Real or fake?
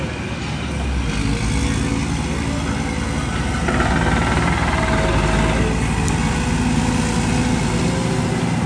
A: real